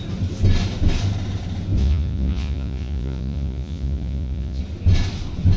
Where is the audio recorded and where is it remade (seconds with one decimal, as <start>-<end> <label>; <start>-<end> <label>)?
0.0-1.8 recorded; 1.8-4.6 remade; 4.6-5.6 recorded